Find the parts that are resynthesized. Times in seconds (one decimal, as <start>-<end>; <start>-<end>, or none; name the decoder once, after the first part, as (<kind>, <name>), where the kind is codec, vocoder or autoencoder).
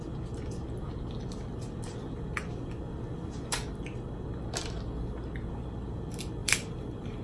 6.4-7.2 (vocoder, BigVGAN v2)